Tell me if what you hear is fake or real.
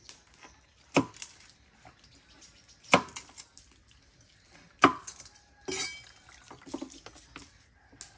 real